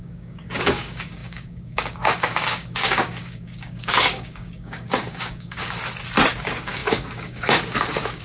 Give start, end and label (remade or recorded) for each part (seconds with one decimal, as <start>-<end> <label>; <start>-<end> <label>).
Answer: 0.0-5.8 remade; 5.8-6.3 recorded; 6.3-8.2 remade